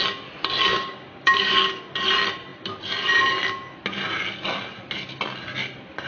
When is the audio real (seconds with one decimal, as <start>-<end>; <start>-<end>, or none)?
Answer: 0.0-0.7; 1.8-6.1